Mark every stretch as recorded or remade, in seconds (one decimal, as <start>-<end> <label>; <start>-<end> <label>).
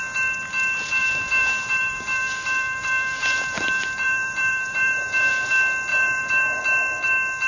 0.0-1.0 recorded; 1.0-5.5 remade; 5.5-5.9 recorded; 5.9-6.6 remade; 6.6-7.5 recorded